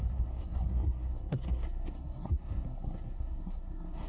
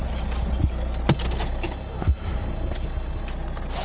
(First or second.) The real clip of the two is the second